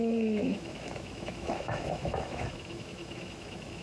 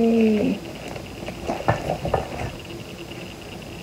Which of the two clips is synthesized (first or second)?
first